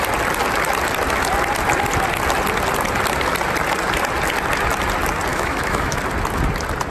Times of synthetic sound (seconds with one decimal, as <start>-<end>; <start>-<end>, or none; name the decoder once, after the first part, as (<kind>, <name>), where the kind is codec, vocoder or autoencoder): 5.3-6.0 (autoencoder, DAC-VAE)